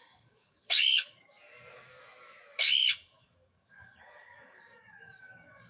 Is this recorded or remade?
remade